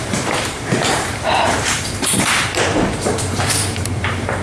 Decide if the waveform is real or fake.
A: fake